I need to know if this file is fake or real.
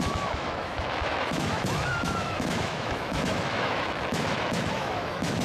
fake